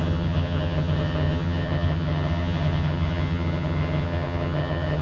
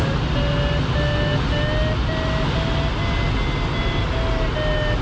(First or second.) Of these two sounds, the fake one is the first